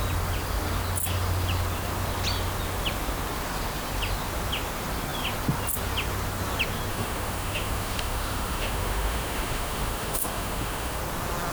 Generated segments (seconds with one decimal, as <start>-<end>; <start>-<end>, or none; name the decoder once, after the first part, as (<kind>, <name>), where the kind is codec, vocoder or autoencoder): 6.9-11.0 (autoencoder, DAC-VAE)